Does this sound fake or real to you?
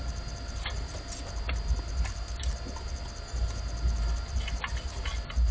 real